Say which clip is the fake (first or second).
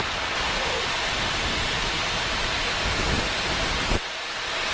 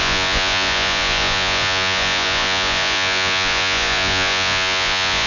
second